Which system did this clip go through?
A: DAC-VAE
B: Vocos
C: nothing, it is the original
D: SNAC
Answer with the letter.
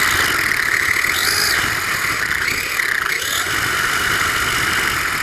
C